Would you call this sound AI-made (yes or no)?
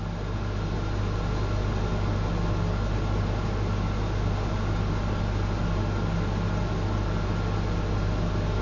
no